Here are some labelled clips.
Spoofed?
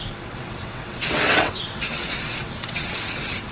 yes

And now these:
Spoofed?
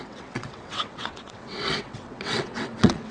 yes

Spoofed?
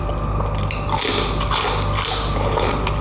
no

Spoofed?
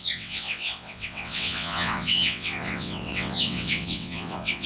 yes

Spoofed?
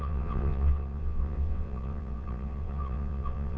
yes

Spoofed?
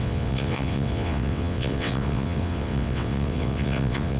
yes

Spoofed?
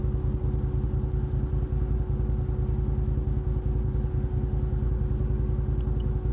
no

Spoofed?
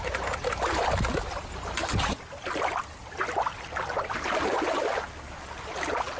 no